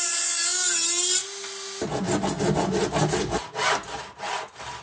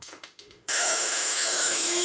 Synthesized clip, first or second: second